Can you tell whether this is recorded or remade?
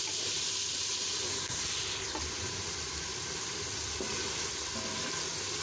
recorded